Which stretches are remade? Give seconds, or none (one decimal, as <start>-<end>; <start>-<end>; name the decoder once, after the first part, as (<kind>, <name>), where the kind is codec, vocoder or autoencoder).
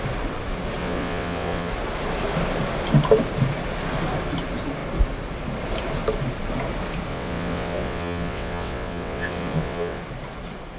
0.8-1.7 (vocoder, WaveNeXt); 7.1-10.0